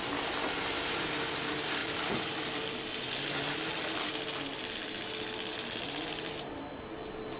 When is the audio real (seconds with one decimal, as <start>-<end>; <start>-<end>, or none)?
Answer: 0.0-1.8; 3.1-7.4